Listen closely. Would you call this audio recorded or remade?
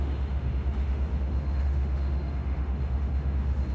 remade